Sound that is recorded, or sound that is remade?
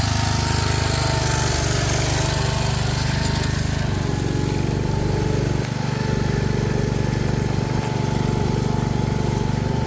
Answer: recorded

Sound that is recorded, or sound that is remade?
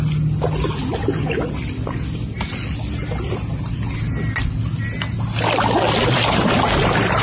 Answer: recorded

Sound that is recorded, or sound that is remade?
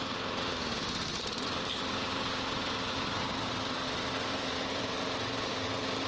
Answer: remade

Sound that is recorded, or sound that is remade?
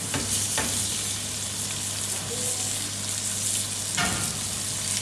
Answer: recorded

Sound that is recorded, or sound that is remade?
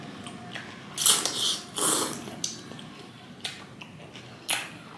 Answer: recorded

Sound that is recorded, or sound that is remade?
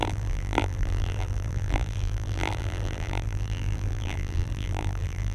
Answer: remade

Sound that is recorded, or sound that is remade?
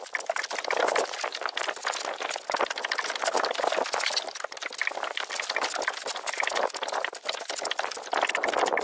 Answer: recorded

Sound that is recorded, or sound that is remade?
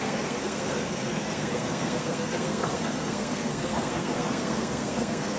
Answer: remade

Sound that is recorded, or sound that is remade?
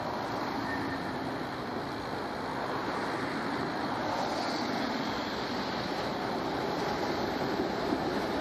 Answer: recorded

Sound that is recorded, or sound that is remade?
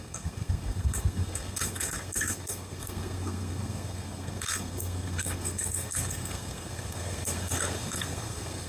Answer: remade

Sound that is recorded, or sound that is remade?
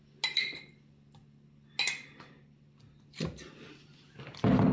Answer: recorded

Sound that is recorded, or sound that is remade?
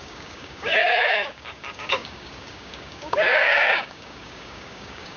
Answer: remade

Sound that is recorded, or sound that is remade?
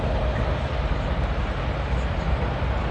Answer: recorded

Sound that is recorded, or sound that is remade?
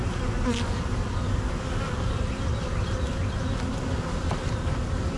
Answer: recorded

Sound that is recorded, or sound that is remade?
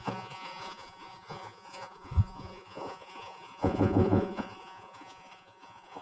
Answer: remade